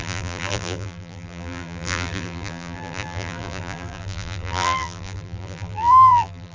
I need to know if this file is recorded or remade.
remade